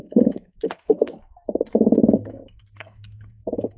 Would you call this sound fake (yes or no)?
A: yes